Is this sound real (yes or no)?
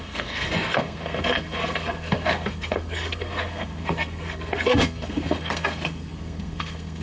no